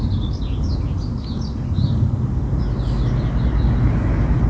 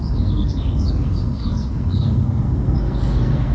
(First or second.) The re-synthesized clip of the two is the second